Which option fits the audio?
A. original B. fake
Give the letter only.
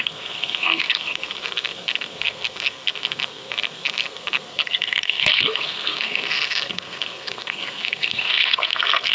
B